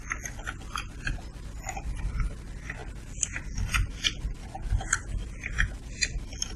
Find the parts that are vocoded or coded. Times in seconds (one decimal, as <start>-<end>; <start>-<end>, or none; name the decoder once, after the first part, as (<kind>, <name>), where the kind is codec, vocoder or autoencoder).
none